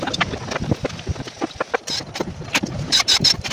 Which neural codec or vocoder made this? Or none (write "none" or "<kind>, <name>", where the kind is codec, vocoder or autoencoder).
none